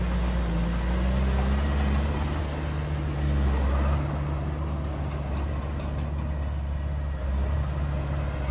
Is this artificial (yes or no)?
no